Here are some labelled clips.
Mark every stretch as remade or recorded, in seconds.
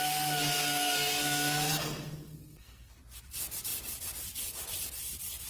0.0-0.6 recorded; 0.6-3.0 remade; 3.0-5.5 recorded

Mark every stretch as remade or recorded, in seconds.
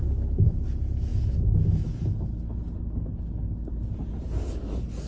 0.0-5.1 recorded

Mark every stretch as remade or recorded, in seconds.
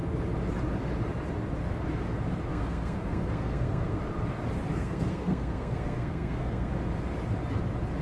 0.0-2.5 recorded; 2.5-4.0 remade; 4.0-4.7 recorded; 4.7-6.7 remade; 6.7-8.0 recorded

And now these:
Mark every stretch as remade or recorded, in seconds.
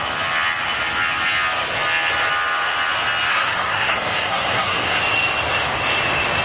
0.0-3.3 recorded; 3.3-5.0 remade; 5.0-6.4 recorded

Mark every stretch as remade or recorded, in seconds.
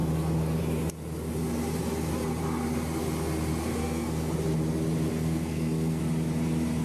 0.0-3.8 recorded; 3.8-4.3 remade; 4.3-5.1 recorded; 5.1-6.0 remade; 6.0-6.8 recorded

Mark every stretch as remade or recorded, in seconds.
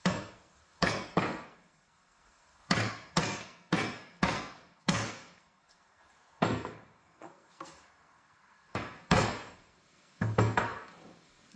0.0-11.6 remade